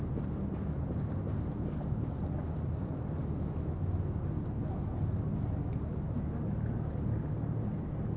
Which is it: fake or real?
real